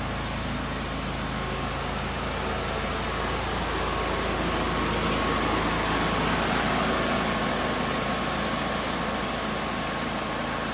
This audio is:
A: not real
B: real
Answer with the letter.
B